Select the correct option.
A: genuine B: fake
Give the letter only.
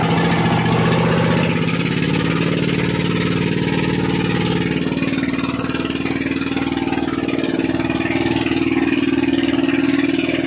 A